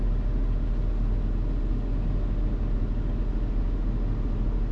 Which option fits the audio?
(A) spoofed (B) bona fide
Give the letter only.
B